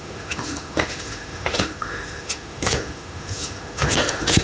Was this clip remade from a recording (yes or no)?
yes